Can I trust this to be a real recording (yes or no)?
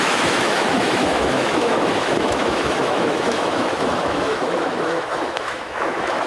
no